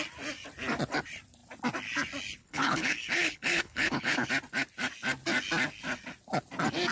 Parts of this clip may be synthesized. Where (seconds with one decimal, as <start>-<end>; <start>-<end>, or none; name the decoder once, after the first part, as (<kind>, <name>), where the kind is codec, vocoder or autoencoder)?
2.4-4.3 (codec, HILCodec)